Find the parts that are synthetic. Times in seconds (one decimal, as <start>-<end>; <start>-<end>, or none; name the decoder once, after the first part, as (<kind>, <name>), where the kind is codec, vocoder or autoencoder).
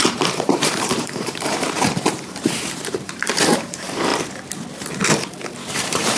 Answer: 0.0-4.1 (vocoder, BigVGAN v2); 5.7-6.2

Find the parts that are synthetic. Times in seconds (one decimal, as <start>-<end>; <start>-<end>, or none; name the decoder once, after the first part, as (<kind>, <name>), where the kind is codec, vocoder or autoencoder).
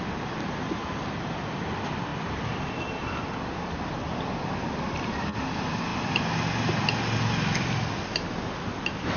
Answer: 0.0-5.9 (vocoder, BigVGAN v2)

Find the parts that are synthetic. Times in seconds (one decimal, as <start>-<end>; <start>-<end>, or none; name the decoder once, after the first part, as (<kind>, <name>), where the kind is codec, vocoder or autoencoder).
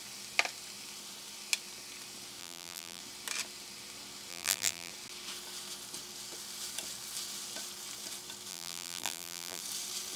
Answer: 2.4-3.0 (vocoder, BigVGAN v2); 4.3-4.9; 8.5-9.6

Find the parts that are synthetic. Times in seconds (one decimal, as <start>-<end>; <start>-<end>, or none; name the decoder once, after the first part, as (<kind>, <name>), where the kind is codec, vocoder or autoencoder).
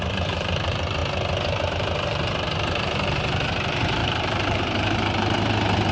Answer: 0.0-1.0 (vocoder, BigVGAN v2); 1.7-5.9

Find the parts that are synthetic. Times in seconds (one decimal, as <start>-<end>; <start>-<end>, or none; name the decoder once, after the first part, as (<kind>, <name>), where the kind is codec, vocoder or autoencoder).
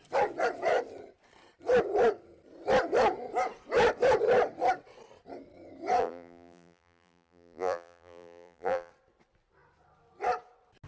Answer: 6.0-8.9 (vocoder, BigVGAN v2)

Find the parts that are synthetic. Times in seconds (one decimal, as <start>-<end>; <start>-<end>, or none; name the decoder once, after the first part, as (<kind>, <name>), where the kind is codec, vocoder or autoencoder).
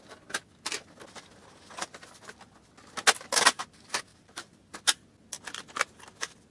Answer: 4.1-4.7 (vocoder, BigVGAN v2)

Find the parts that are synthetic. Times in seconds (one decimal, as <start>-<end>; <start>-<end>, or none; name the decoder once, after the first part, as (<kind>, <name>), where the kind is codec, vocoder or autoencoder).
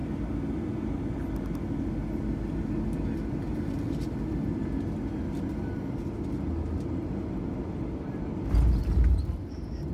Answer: none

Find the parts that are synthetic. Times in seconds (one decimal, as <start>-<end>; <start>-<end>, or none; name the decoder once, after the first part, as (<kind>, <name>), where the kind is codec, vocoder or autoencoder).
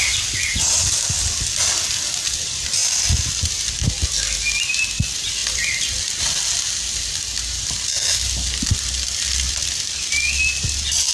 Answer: none